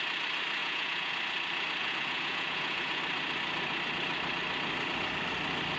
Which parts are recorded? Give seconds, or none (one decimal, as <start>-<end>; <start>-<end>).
0.0-0.6; 1.1-1.8; 3.0-5.8